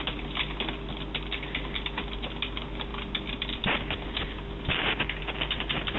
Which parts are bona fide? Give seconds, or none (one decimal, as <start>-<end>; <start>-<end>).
0.0-6.0